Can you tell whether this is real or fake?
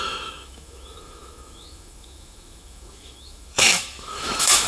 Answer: fake